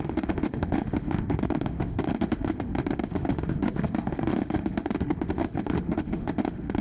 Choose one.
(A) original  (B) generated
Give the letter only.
B